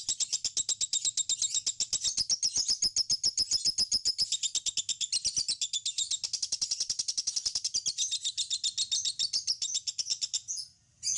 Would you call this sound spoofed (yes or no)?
no